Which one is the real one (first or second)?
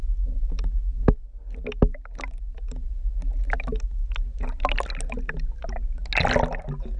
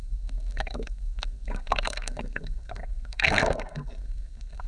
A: first